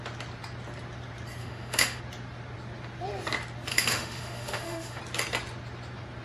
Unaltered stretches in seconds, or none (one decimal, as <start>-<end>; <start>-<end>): 0.0-1.4; 2.0-3.7; 5.0-6.2